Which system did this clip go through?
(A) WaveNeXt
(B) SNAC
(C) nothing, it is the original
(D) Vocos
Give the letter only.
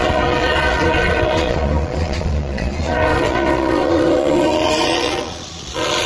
D